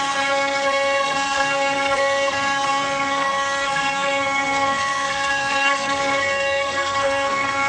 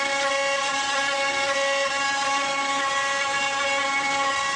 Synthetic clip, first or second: first